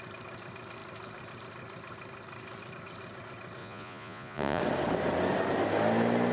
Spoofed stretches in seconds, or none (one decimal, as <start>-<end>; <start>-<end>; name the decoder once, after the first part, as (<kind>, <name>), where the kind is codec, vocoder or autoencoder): 3.6-4.6 (vocoder, Vocos)